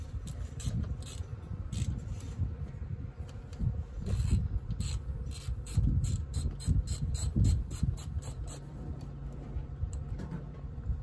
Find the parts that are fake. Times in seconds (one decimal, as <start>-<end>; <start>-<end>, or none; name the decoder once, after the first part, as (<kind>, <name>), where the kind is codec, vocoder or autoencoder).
0.0-1.3 (vocoder, BigVGAN v2); 6.5-11.0